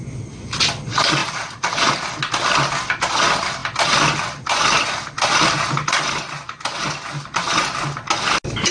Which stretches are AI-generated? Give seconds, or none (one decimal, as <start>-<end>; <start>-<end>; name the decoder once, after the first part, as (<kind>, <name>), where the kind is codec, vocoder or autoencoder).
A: 1.2-1.9 (vocoder, BigVGAN v2)

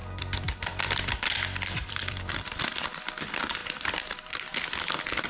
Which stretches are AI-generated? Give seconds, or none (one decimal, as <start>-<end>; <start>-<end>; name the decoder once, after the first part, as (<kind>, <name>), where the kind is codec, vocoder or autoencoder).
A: 1.8-2.7 (vocoder, BigVGAN v2); 3.6-4.3

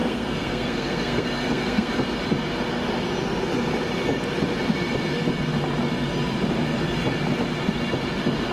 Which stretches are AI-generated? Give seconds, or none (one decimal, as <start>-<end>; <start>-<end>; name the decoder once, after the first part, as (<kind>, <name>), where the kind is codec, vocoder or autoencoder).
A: 0.0-1.9 (codec, SNAC)

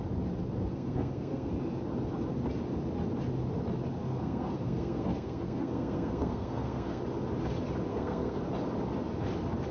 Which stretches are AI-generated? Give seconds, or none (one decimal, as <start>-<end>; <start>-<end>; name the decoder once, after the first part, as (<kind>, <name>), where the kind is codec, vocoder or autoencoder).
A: 0.7-1.5 (codec, SNAC); 4.0-7.0; 7.9-8.4

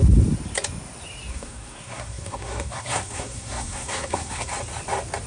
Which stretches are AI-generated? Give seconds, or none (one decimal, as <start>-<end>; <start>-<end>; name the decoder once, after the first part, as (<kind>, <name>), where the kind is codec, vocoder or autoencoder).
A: 1.3-4.5 (codec, SNAC)